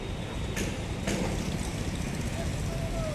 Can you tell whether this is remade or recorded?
recorded